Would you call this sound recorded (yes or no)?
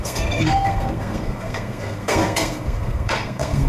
no